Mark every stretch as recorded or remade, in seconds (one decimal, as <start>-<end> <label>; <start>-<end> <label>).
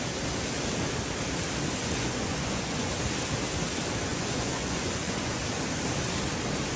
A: 0.0-1.8 recorded; 1.8-2.9 remade; 2.9-4.1 recorded; 4.1-5.4 remade; 5.4-6.8 recorded